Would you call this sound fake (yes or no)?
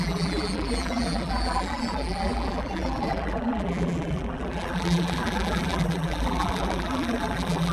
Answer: yes